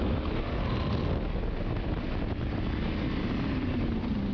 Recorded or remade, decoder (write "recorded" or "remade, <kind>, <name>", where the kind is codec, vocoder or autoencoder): recorded